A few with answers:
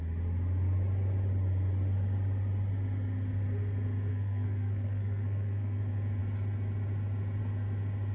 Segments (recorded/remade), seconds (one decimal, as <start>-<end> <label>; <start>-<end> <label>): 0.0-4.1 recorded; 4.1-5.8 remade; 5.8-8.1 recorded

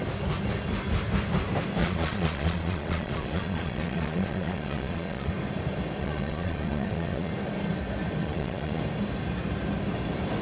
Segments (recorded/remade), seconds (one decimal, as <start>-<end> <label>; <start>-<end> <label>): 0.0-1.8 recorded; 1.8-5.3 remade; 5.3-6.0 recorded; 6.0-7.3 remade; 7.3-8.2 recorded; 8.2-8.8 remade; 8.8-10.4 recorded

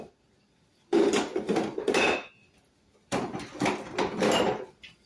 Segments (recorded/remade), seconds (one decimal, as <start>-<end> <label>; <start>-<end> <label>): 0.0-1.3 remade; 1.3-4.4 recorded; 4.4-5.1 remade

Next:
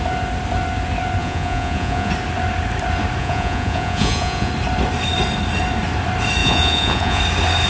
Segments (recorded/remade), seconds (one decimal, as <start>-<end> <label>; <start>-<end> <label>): 0.0-1.2 recorded; 1.2-2.1 remade; 2.1-3.2 recorded; 3.2-4.5 remade; 4.5-6.4 recorded; 6.4-7.2 remade; 7.2-7.7 recorded

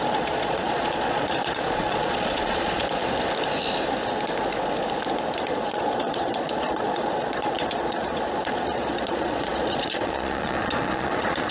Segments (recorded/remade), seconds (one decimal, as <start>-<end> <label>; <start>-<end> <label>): 0.0-3.0 remade; 3.0-5.5 recorded; 5.5-11.5 remade

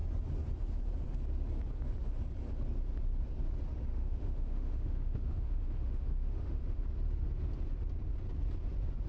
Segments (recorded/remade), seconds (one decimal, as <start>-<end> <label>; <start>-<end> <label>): 0.0-3.9 recorded; 3.9-6.8 remade; 6.8-9.1 recorded

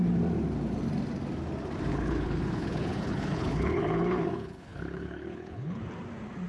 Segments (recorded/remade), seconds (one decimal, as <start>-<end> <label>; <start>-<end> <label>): 0.0-1.9 recorded; 1.9-5.8 remade; 5.8-6.5 recorded